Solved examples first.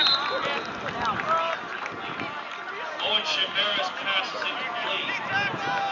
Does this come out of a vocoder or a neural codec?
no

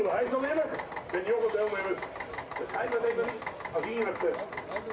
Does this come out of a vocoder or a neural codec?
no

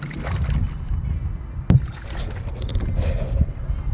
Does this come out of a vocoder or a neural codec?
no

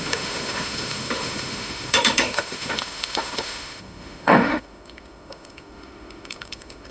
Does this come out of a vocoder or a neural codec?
yes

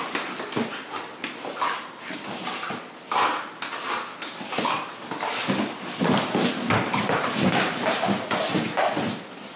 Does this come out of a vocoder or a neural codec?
no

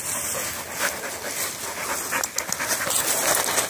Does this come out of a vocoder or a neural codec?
no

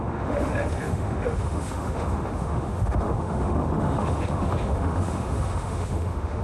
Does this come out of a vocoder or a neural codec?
yes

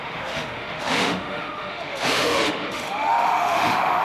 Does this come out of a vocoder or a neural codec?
yes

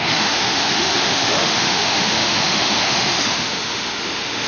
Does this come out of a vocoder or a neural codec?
yes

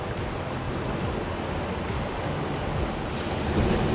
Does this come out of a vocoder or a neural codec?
no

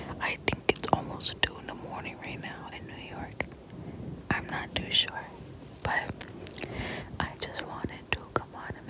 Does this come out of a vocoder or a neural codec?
no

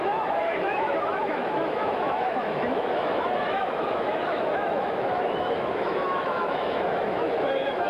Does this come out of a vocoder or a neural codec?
yes